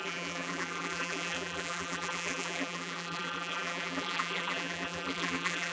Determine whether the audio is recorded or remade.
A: remade